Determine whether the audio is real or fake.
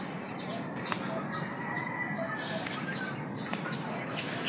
real